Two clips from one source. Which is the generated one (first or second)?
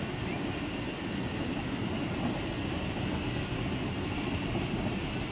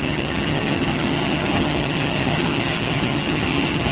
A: second